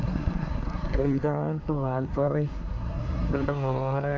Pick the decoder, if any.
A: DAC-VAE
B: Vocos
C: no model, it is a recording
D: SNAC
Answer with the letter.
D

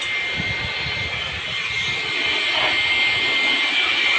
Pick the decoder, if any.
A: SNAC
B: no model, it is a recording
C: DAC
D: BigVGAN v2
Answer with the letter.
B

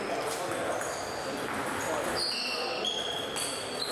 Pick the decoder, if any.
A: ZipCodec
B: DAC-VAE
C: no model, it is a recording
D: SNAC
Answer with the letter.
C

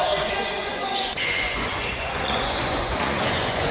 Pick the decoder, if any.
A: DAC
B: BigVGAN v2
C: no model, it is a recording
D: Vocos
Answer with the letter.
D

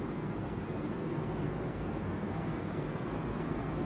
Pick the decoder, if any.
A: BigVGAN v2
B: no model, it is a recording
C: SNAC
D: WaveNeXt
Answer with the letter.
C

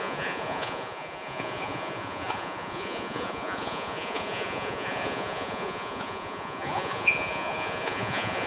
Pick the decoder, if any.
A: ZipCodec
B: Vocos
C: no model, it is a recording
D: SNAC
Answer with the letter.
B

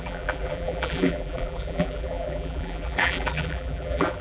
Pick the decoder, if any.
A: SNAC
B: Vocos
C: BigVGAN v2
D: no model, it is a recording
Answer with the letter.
C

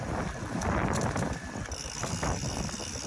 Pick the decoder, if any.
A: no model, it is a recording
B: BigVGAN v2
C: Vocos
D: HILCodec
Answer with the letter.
A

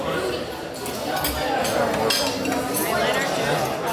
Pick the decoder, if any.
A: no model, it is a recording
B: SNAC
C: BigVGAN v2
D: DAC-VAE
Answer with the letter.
A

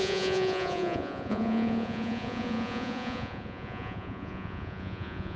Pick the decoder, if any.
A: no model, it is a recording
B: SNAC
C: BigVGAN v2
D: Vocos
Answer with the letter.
D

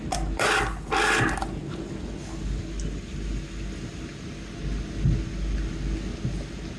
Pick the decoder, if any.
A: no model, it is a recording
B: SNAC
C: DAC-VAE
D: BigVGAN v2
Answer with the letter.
A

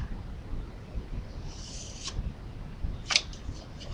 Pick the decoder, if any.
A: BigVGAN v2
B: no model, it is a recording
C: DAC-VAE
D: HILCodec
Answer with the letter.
B